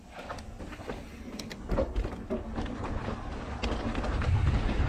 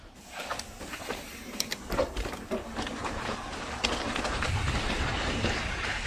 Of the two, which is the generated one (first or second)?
second